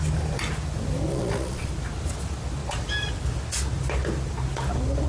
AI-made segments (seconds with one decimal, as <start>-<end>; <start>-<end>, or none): 1.1-1.7